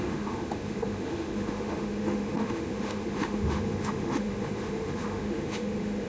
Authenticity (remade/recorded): remade